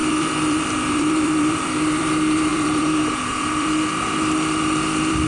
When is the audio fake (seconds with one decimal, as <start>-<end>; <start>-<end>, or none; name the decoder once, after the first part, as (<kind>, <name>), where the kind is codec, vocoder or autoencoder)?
0.0-5.3 (vocoder, BigVGAN v2)

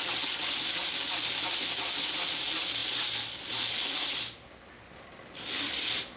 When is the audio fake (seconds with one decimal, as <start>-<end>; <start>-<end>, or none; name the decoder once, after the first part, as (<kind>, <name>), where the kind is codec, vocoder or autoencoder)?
none

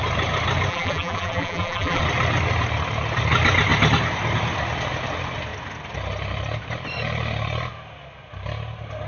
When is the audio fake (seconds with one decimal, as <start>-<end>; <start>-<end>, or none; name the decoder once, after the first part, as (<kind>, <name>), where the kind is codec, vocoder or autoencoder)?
0.7-2.0 (vocoder, BigVGAN v2)